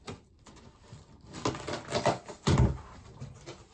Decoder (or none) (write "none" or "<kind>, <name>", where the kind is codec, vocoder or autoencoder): none